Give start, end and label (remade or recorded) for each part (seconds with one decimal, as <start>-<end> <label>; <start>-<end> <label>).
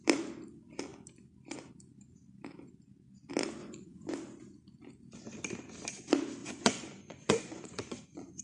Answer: 0.0-3.6 recorded; 3.6-4.1 remade; 4.1-6.4 recorded; 6.4-8.4 remade